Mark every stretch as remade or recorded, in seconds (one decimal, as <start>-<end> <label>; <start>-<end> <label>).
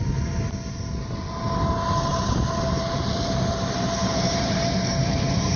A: 0.0-2.1 recorded; 2.1-5.6 remade